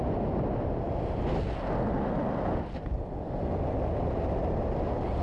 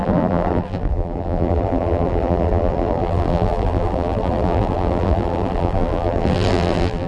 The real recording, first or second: first